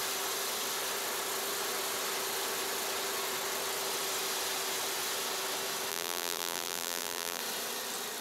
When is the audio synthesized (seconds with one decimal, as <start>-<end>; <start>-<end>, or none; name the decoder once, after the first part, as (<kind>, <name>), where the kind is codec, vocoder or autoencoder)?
5.9-7.4 (vocoder, BigVGAN v2)